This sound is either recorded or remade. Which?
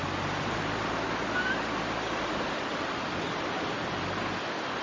recorded